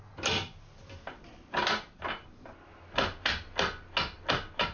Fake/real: real